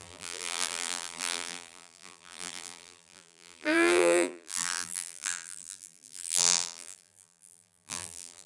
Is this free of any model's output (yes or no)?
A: no